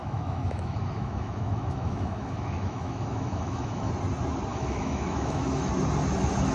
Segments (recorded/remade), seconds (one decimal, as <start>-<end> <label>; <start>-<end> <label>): 0.0-3.9 remade; 3.9-4.5 recorded; 4.5-5.7 remade; 5.7-6.5 recorded